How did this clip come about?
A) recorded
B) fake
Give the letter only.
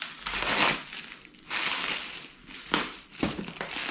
B